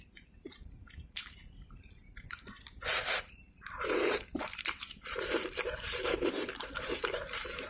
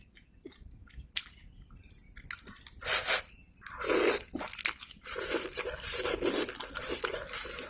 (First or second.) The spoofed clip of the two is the first